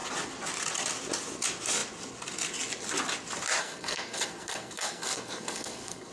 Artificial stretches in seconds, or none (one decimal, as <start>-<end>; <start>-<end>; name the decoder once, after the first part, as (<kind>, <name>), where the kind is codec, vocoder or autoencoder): 3.6-6.1 (codec, SNAC)